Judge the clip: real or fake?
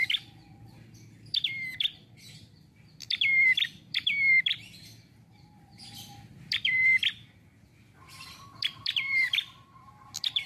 fake